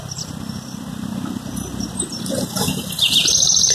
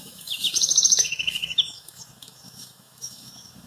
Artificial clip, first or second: second